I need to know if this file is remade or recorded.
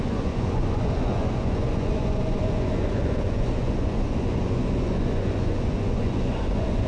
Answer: remade